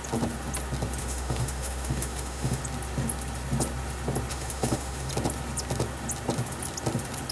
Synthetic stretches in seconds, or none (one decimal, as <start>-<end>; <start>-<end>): 1.0-2.6; 4.3-5.1